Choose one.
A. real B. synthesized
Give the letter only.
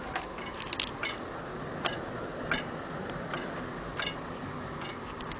A